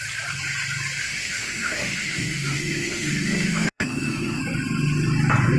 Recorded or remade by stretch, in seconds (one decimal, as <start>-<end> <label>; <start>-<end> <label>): 0.0-1.0 recorded; 1.0-4.4 remade; 4.4-5.6 recorded